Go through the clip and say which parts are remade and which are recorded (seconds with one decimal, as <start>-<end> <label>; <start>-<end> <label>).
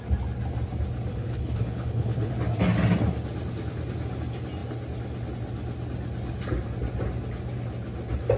0.0-1.1 recorded; 1.1-2.3 remade; 2.3-8.4 recorded